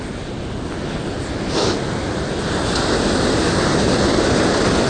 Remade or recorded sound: recorded